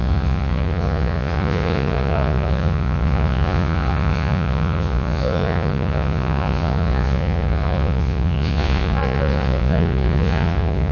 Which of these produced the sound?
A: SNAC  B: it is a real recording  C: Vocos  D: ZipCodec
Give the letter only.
C